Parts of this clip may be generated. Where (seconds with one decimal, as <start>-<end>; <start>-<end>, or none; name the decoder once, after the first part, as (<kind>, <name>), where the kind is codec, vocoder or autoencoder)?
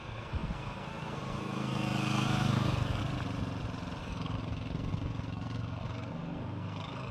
0.0-3.0 (codec, SNAC); 4.0-7.1